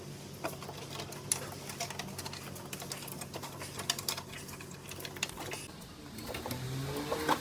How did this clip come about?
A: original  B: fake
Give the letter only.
A